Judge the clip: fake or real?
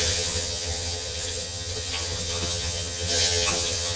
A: fake